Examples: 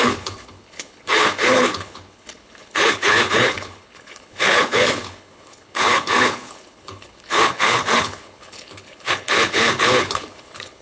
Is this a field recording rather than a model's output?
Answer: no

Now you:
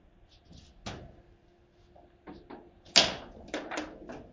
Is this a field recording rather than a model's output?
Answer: yes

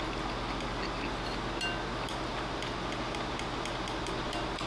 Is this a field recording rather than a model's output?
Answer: yes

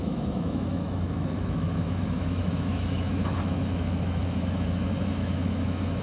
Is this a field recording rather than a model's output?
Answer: no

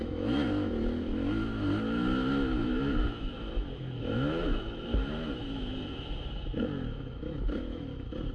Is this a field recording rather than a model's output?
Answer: no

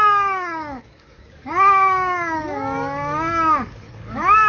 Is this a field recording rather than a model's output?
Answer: no